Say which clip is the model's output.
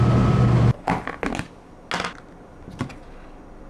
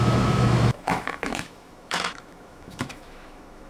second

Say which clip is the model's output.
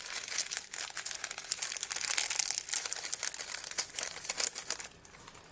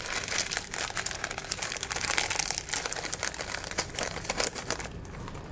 second